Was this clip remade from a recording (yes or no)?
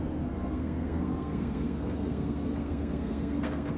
yes